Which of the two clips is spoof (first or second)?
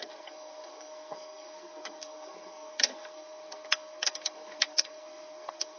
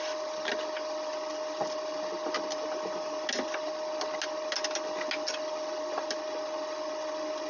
first